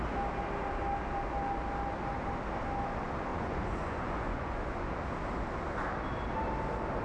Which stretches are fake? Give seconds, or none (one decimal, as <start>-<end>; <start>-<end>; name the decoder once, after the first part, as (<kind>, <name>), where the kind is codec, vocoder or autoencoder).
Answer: 3.3-4.9 (vocoder, Vocos)